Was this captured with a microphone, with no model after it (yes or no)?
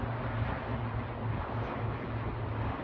yes